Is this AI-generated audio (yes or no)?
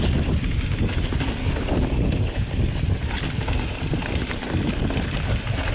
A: no